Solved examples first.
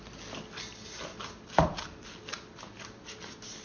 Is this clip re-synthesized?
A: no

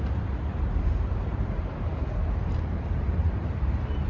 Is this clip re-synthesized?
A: yes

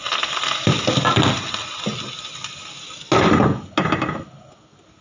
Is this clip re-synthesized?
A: no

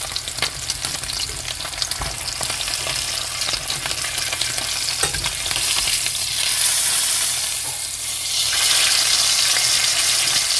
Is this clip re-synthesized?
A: no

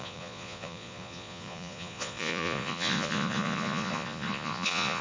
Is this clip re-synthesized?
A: yes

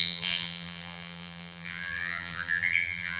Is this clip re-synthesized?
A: yes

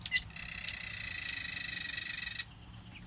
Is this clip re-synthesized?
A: no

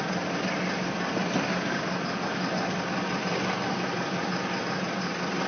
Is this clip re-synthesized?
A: no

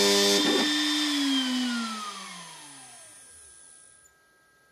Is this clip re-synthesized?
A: no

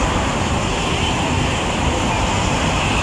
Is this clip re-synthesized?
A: no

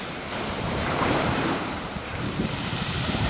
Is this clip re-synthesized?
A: yes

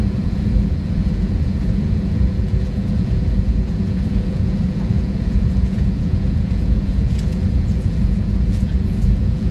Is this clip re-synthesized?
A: yes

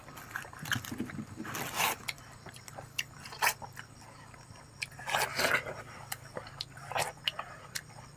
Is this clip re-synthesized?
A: no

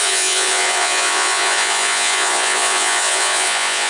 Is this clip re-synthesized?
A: yes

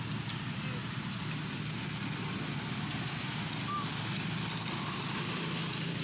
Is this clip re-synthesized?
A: no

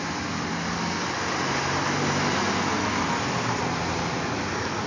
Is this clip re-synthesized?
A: no